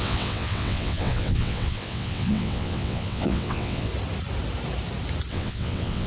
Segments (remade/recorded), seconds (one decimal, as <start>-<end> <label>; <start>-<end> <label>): 0.0-3.9 remade; 3.9-5.3 recorded; 5.3-6.1 remade